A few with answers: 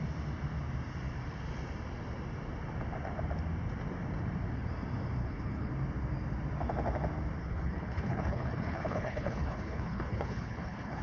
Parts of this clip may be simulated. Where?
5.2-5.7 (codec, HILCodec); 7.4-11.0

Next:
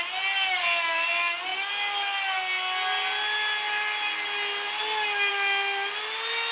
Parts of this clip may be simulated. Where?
none

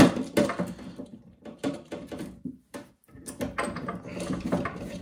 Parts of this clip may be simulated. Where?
1.1-3.0 (vocoder, BigVGAN v2)

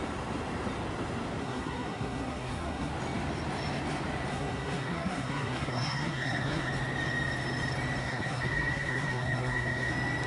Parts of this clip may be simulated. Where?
1.4-2.9 (codec, SNAC); 4.3-6.7; 8.0-9.9